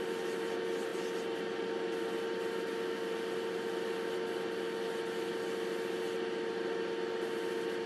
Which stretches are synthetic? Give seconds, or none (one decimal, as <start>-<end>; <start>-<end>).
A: none